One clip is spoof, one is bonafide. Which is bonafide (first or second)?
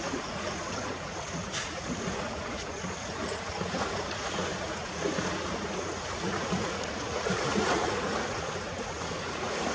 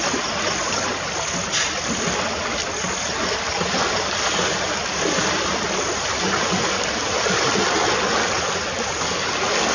second